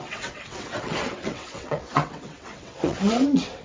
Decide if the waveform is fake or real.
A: fake